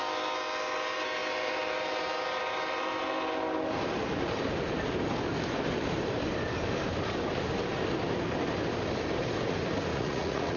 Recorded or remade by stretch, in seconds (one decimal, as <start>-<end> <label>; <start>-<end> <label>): 0.0-9.9 recorded; 9.9-10.6 remade